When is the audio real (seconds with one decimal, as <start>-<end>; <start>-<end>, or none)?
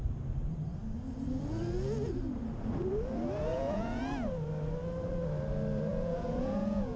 0.0-3.5; 4.0-5.9